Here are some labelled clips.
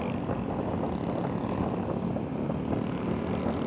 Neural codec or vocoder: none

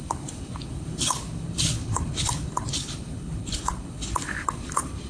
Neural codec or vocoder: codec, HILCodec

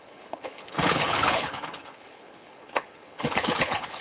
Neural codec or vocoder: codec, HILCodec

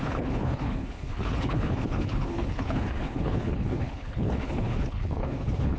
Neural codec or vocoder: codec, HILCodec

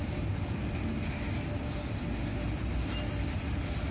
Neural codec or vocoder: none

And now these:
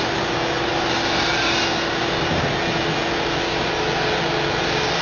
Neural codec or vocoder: none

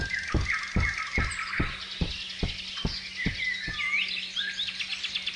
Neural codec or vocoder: none